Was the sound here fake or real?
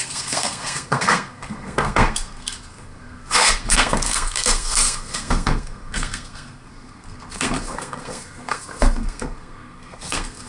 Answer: fake